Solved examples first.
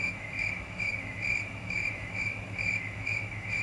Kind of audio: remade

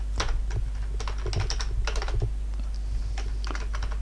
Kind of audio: recorded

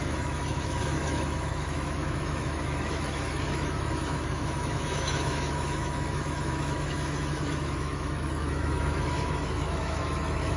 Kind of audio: remade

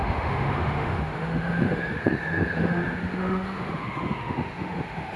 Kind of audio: remade